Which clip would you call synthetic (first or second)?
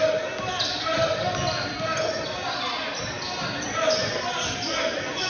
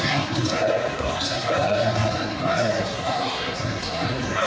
second